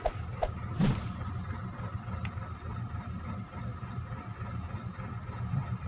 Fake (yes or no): no